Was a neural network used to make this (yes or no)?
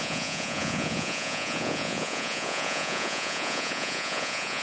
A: yes